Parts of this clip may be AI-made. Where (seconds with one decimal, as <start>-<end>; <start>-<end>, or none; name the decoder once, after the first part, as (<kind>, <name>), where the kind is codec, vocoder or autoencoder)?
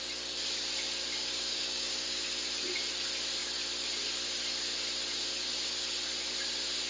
1.2-2.2 (codec, DAC)